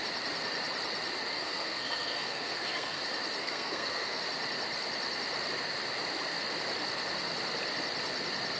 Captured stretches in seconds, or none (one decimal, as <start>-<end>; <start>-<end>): 0.0-1.3; 3.0-3.4; 4.2-8.6